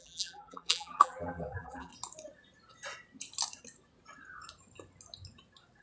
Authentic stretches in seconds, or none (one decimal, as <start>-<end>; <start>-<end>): 1.9-5.8